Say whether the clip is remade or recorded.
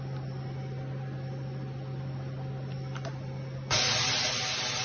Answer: recorded